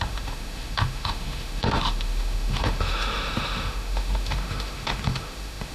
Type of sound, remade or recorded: remade